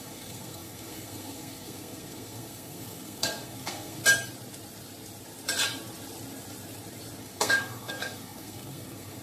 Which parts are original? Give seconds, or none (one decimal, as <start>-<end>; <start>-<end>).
4.0-7.2

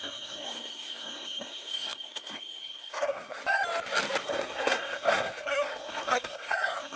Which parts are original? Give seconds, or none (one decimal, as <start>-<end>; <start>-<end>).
3.4-4.3